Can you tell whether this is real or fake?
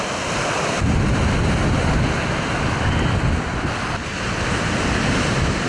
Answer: real